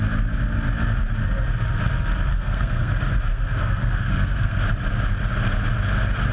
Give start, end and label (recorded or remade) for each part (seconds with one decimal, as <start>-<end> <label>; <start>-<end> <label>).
0.0-2.3 recorded; 2.3-2.9 remade; 2.9-3.3 recorded; 3.3-4.6 remade; 4.6-6.3 recorded

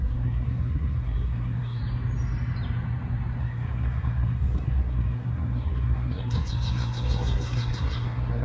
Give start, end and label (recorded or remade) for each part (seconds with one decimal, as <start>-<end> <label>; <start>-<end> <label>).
0.0-1.8 remade; 1.8-3.4 recorded; 3.4-8.4 remade

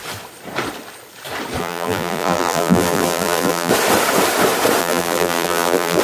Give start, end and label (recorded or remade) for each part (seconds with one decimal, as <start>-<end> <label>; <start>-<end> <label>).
0.0-1.6 recorded; 1.6-3.7 remade; 3.7-4.8 recorded; 4.8-6.0 remade

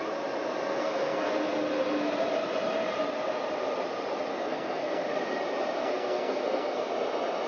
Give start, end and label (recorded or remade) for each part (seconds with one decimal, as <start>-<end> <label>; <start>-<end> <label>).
0.0-0.8 recorded; 0.8-1.3 remade; 1.3-4.3 recorded; 4.3-5.2 remade; 5.2-5.8 recorded; 5.8-6.9 remade; 6.9-7.5 recorded

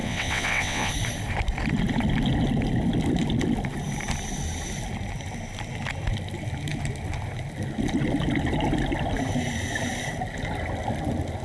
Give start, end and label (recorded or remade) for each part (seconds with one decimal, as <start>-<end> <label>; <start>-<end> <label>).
0.0-0.9 remade; 0.9-11.4 recorded

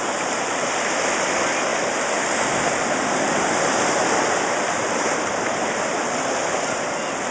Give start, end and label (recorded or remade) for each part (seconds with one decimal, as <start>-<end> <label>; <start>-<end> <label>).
0.0-7.3 recorded

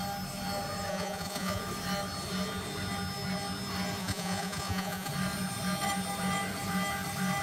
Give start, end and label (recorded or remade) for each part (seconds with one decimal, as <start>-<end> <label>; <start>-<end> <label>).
0.0-0.9 recorded; 0.9-1.6 remade; 1.6-4.0 recorded; 4.0-5.1 remade; 5.1-7.4 recorded

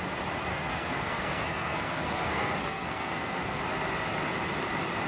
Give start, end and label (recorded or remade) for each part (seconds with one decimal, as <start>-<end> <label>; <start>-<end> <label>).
0.0-0.5 recorded; 0.5-3.6 remade; 3.6-5.1 recorded